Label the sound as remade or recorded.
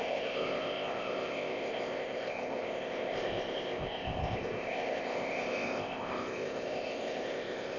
remade